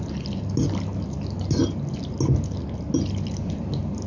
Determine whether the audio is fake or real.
real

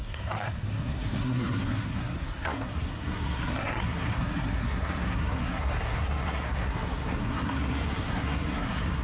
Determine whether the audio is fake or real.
fake